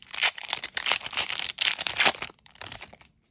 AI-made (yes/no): yes